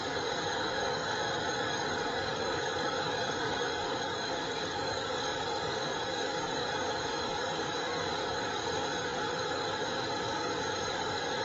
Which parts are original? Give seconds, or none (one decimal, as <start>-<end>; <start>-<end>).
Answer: none